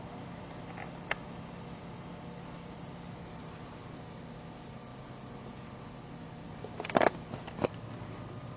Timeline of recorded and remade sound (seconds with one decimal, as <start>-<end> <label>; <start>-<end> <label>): 0.0-8.6 recorded